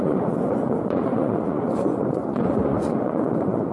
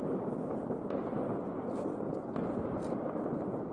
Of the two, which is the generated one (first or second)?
first